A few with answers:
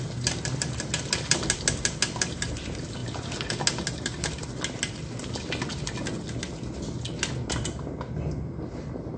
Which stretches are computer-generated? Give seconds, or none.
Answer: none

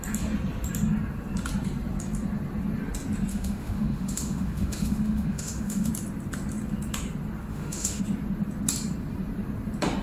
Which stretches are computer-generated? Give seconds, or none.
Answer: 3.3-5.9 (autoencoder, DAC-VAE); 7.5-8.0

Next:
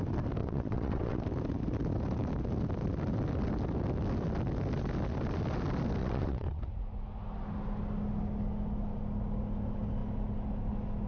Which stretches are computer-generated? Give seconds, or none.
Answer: 0.4-1.2 (vocoder, WaveNeXt); 6.0-6.6

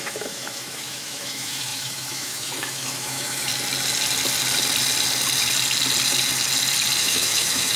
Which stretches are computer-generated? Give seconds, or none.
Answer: 0.0-3.5 (autoencoder, DAC-VAE); 7.0-7.8

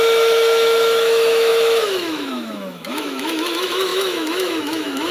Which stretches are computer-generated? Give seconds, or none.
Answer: 0.0-5.1 (autoencoder, DAC-VAE)

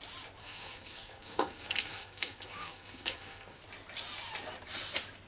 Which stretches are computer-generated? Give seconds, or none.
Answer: 0.4-3.6 (codec, SNAC)